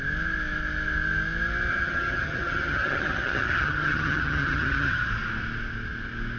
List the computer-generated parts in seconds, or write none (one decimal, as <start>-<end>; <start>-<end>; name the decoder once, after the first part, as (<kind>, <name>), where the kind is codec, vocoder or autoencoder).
1.7-5.1 (vocoder, HiFi-GAN)